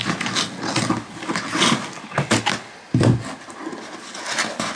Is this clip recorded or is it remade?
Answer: recorded